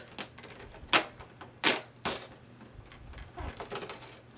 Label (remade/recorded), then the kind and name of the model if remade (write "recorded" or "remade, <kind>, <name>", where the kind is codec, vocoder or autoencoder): recorded